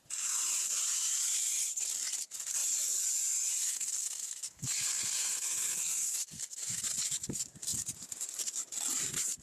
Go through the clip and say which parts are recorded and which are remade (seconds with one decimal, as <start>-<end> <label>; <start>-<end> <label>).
0.0-3.7 recorded; 3.7-6.8 remade; 6.8-9.4 recorded